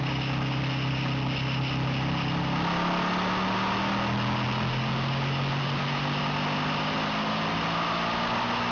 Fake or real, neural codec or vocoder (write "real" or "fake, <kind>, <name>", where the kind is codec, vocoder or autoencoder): real